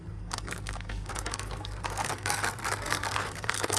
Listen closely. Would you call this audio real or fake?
fake